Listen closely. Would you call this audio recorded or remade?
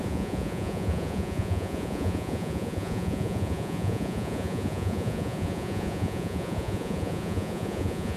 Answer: remade